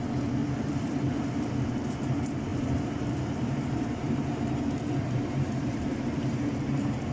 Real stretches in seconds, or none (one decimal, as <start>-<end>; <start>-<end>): 0.0-0.4; 1.5-2.5